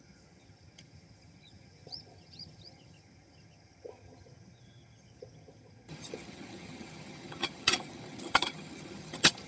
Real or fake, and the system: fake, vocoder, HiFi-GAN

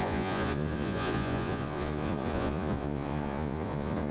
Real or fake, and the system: fake, vocoder, Vocos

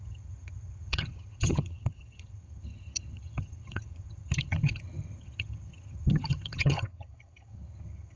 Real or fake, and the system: fake, vocoder, HiFi-GAN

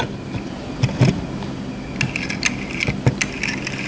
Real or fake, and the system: real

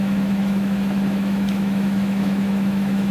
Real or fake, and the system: fake, autoencoder, DAC-VAE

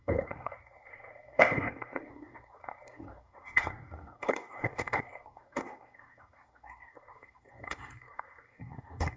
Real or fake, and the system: fake, codec, SNAC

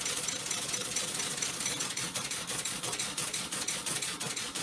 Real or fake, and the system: fake, vocoder, Vocos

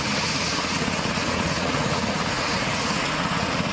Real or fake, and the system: fake, vocoder, Vocos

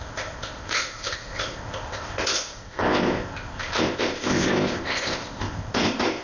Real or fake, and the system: fake, codec, ZipCodec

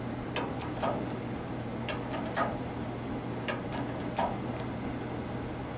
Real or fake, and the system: real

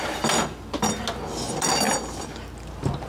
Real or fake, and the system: real